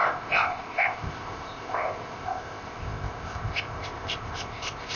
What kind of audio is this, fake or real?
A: fake